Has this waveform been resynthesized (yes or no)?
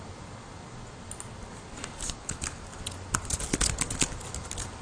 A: no